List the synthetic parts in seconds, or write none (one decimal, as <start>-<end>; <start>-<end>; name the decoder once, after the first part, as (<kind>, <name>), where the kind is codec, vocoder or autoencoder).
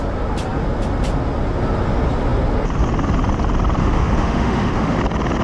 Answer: 3.8-5.0 (autoencoder, DAC-VAE)